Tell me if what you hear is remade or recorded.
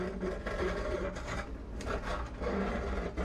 recorded